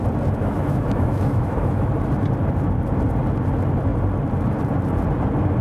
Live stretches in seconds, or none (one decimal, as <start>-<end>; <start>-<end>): 0.0-0.4; 1.9-5.6